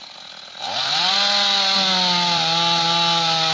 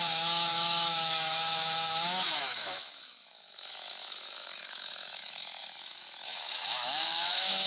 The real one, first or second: first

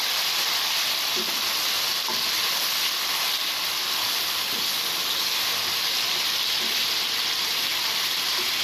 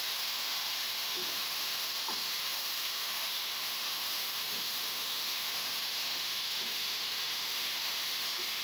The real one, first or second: first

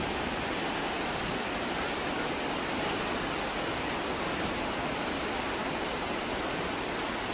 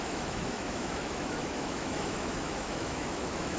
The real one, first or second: first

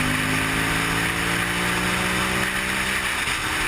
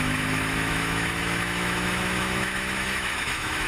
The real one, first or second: first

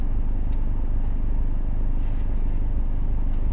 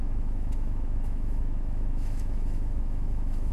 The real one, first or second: first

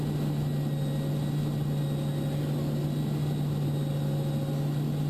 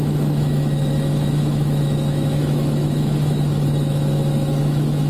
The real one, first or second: first